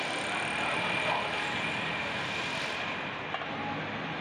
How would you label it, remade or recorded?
recorded